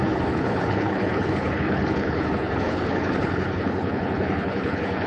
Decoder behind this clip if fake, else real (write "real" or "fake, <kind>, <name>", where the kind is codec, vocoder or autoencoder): fake, codec, HILCodec